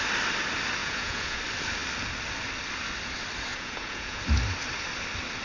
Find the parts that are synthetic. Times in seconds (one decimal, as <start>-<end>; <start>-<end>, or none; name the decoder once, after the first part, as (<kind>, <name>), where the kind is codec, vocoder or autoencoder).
0.8-1.4 (vocoder, Vocos); 3.5-4.2